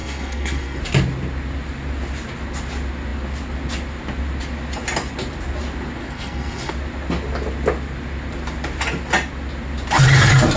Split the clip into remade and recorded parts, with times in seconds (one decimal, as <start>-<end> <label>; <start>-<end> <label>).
0.0-0.8 remade; 0.8-6.0 recorded; 6.0-6.7 remade; 6.7-10.6 recorded